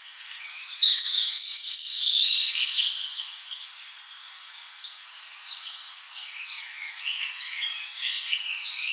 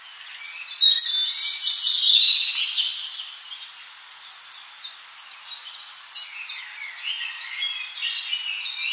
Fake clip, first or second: first